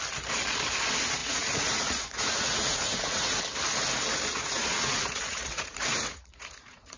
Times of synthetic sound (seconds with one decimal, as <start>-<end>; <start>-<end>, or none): 1.2-3.4; 4.3-7.0